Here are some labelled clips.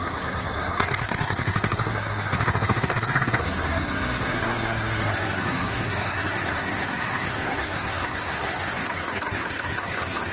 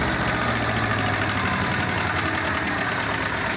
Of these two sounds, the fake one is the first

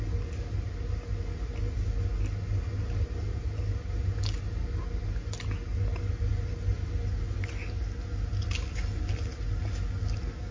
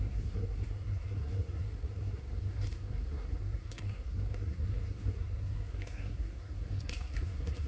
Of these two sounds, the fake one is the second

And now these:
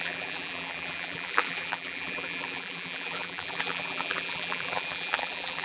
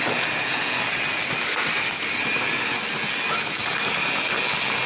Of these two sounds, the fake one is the first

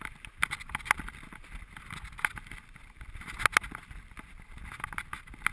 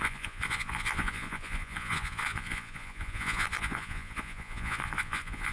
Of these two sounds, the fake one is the second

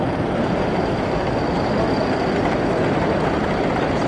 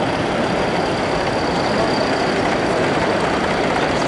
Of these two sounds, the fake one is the second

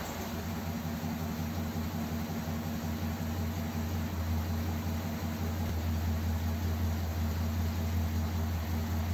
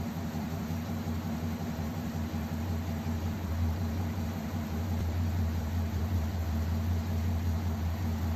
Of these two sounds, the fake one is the second